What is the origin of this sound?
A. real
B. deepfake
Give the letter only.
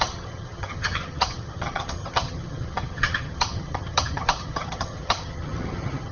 B